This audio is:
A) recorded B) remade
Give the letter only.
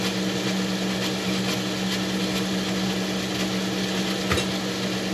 A